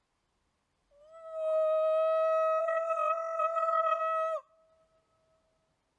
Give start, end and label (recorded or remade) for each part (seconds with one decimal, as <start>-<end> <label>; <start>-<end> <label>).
0.0-2.6 recorded; 2.6-4.0 remade; 4.0-6.0 recorded